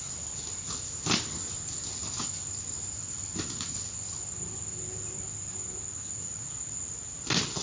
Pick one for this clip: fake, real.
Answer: real